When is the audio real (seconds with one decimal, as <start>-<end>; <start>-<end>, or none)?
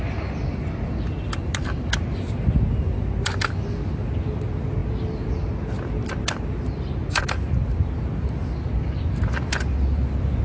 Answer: 0.0-10.4